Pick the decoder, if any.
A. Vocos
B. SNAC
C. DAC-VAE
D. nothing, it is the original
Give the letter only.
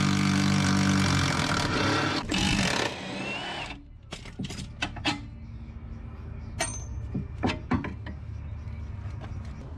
D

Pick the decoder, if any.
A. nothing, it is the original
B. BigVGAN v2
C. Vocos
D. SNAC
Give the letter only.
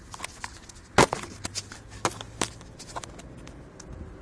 A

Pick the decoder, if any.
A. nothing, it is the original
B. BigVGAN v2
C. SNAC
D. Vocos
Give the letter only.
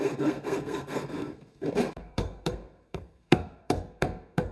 C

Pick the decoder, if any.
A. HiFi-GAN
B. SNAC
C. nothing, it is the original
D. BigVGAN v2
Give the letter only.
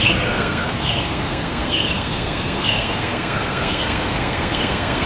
B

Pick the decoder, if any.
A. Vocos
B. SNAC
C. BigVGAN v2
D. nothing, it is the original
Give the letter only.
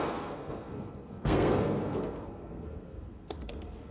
B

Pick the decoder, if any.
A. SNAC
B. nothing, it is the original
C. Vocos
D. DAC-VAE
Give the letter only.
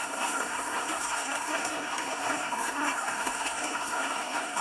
A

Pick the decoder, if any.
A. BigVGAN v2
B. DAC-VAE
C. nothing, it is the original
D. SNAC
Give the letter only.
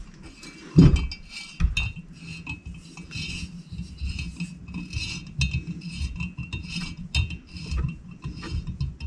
C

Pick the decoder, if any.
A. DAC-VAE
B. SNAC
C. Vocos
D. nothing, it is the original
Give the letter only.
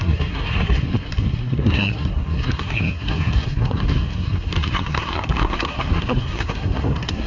B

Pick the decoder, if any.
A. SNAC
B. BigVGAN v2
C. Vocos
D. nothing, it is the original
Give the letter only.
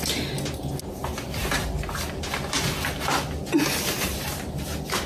D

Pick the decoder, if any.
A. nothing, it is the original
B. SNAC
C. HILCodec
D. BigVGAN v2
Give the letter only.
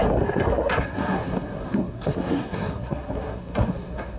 B